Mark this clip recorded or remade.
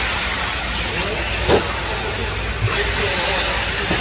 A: recorded